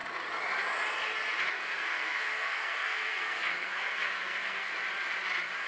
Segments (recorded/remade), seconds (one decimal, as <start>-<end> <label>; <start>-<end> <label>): 0.0-1.5 recorded; 1.5-4.7 remade; 4.7-5.7 recorded